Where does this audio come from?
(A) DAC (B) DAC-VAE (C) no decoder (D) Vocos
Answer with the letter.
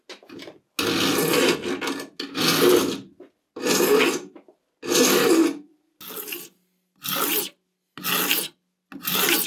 C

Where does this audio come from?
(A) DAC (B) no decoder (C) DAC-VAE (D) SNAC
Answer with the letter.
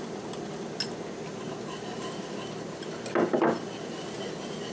B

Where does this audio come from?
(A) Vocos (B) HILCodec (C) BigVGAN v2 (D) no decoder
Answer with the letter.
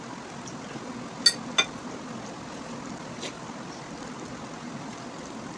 D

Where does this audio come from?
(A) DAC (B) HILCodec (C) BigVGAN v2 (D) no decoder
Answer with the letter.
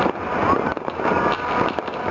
D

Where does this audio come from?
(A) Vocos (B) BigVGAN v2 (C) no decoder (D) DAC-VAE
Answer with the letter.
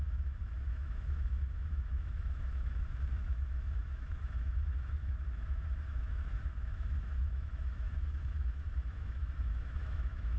D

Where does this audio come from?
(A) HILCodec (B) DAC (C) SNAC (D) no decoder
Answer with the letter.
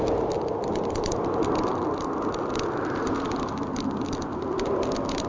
D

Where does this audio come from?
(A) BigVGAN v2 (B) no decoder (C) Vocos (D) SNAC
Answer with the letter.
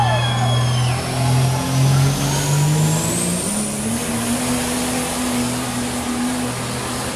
B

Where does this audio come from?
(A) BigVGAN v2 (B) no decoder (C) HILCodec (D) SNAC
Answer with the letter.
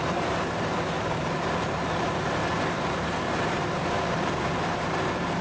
A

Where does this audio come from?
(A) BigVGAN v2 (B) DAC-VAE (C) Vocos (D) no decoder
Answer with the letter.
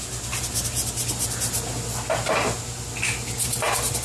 D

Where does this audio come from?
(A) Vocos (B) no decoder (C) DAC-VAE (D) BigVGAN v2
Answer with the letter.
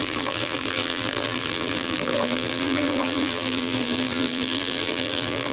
D